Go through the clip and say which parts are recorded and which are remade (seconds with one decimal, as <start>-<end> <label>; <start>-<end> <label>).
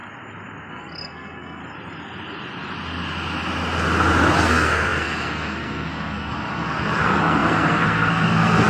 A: 0.0-0.7 recorded; 0.7-1.6 remade; 1.6-4.4 recorded; 4.4-8.7 remade